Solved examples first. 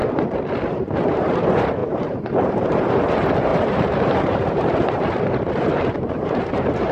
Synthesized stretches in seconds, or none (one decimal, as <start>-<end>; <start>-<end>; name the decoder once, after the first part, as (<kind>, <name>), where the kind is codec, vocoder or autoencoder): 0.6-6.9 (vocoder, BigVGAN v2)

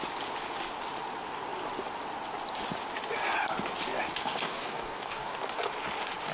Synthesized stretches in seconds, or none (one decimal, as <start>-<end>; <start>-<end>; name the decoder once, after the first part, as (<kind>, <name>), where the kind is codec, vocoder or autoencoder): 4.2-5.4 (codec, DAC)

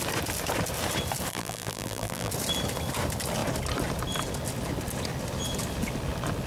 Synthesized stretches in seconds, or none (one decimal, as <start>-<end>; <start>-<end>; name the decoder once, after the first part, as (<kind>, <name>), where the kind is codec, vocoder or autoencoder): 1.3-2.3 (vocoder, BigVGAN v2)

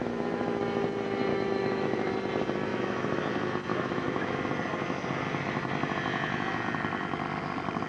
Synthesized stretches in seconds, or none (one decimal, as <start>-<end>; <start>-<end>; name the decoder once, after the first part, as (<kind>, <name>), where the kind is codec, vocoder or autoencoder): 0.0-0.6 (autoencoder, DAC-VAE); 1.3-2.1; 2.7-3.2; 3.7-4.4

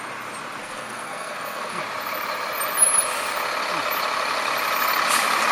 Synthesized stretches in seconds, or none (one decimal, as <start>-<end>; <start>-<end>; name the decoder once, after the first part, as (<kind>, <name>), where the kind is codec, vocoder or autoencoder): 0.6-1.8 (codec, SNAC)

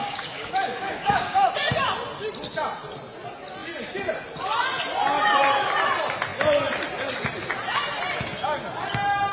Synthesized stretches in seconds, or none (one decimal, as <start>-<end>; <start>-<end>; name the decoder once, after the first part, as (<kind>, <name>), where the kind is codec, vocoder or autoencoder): 0.0-1.5 (codec, DAC)

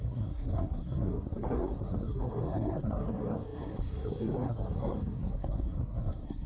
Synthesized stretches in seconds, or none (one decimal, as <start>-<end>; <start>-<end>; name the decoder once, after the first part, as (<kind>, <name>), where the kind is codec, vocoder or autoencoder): 0.0-6.5 (codec, SNAC)

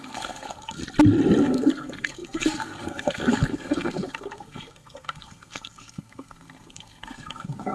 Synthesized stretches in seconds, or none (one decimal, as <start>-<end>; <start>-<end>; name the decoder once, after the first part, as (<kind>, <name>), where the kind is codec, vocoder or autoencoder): 0.0-0.8 (codec, SNAC); 1.4-7.7